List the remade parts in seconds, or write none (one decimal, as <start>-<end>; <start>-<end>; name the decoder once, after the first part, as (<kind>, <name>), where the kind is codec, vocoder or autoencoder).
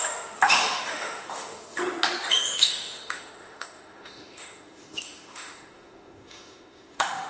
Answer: 0.0-1.8 (autoencoder, DAC-VAE); 2.3-7.3